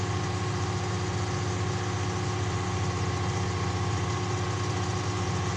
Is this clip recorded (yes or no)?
yes